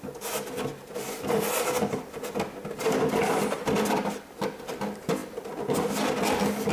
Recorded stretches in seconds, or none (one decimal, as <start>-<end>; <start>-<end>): 0.0-6.7